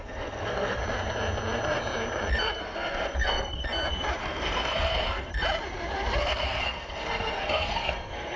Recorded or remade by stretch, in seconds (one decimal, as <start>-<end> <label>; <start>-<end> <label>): 0.0-0.8 remade; 0.8-2.6 recorded; 2.6-3.6 remade; 3.6-4.2 recorded; 4.2-5.3 remade; 5.3-6.2 recorded; 6.2-8.4 remade